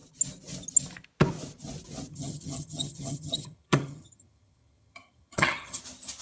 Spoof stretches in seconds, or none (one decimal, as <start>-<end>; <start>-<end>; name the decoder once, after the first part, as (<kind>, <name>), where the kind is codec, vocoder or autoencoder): 2.1-5.8 (vocoder, HiFi-GAN)